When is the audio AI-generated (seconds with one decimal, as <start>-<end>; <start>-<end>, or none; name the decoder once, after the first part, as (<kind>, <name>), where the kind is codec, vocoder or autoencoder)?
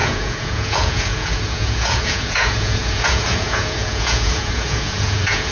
0.0-5.5 (vocoder, Vocos)